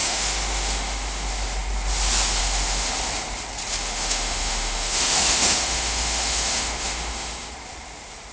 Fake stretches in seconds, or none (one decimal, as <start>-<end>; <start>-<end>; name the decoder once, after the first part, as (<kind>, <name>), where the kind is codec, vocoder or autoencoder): 0.0-1.3 (autoencoder, DAC-VAE); 2.4-2.9; 3.8-7.5